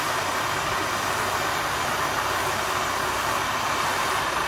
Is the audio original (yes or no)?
no